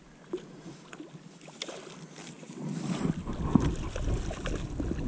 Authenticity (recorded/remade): recorded